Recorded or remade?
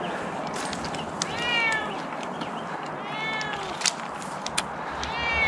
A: recorded